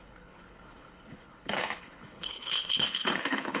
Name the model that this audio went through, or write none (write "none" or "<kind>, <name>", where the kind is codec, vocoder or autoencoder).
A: codec, HILCodec